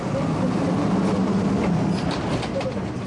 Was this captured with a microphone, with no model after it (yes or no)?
yes